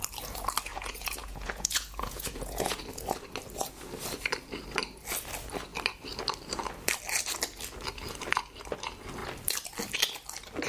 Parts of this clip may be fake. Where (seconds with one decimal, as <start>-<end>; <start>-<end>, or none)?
0.7-2.8